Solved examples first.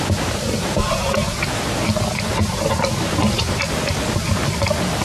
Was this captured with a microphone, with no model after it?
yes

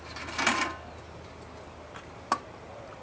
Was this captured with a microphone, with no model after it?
yes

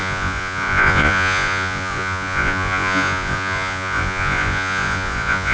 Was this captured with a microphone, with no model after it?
no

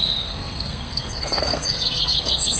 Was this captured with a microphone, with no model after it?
no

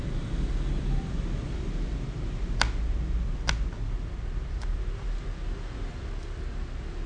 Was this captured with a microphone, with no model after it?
yes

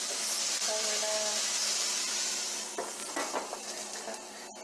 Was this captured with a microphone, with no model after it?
yes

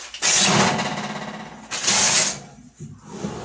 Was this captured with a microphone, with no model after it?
yes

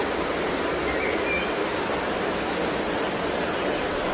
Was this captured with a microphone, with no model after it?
yes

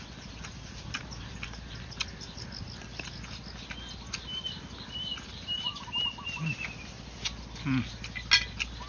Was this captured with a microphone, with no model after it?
yes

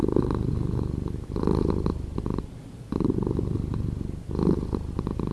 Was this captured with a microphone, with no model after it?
yes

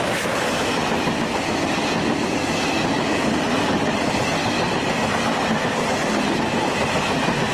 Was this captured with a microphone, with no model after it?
yes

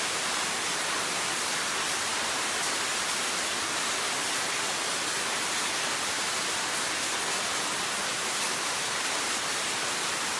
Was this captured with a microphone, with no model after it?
yes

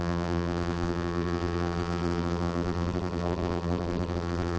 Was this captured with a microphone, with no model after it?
no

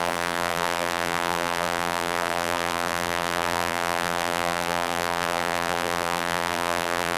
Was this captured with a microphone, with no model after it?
no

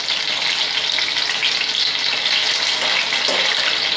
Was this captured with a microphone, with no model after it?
yes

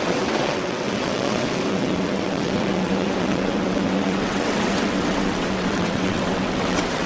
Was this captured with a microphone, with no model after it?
no